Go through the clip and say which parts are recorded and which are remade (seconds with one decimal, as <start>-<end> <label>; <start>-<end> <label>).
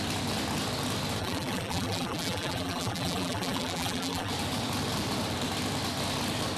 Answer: 0.0-1.2 recorded; 1.2-4.3 remade; 4.3-6.6 recorded